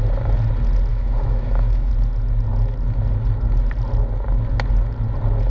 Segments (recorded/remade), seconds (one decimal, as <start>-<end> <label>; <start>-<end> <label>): 0.0-0.9 recorded; 0.9-1.9 remade; 1.9-5.5 recorded